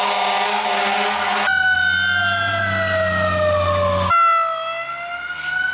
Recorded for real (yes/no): yes